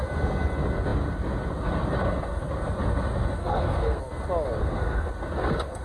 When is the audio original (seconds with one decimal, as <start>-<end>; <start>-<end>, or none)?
0.0-3.4; 4.0-4.6; 5.1-5.8